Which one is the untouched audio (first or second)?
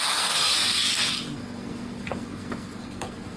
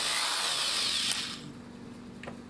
second